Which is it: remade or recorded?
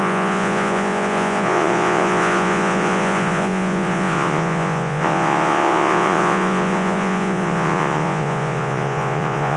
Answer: remade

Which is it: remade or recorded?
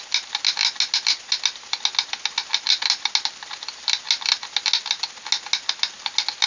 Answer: recorded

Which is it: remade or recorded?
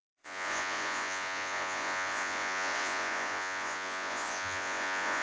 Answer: remade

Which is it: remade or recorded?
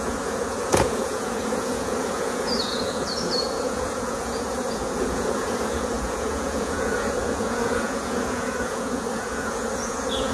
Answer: remade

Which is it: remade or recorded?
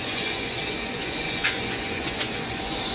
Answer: remade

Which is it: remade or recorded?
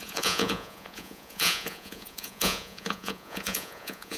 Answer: remade